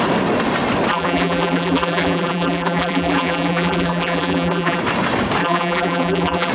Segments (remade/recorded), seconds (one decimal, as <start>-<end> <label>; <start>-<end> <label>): 0.0-0.9 recorded; 0.9-4.8 remade; 4.8-5.4 recorded; 5.4-6.5 remade